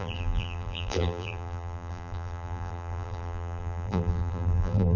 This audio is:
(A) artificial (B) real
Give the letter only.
A